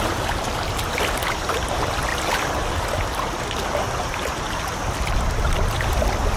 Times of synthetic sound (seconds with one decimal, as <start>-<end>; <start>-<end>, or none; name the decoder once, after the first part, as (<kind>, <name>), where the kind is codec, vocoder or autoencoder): none